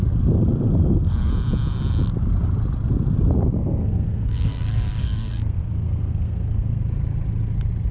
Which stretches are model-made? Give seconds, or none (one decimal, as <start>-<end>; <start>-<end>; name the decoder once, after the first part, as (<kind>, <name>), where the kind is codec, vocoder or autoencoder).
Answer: 0.8-1.3 (codec, SNAC); 3.6-6.8